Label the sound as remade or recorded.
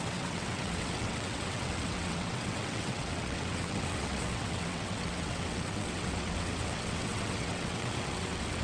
remade